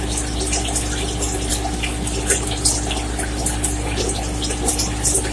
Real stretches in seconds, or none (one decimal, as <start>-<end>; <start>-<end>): 0.0-5.3